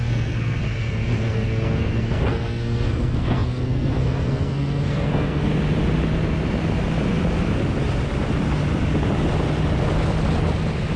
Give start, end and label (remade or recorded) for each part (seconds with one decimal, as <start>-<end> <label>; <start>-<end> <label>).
0.0-5.5 remade; 5.5-11.0 recorded

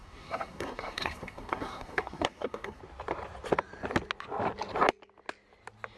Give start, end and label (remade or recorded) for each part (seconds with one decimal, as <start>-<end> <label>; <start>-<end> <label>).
0.0-2.8 remade; 2.8-6.0 recorded

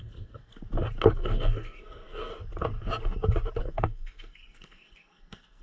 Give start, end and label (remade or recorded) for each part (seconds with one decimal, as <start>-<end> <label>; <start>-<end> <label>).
0.0-0.5 remade; 0.5-1.1 recorded; 1.1-2.3 remade; 2.3-3.6 recorded; 3.6-5.6 remade

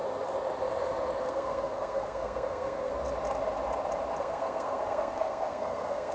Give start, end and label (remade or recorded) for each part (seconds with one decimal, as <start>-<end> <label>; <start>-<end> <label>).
0.0-1.2 recorded; 1.2-2.9 remade; 2.9-4.2 recorded; 4.2-6.1 remade